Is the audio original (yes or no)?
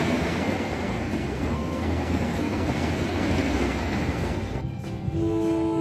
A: no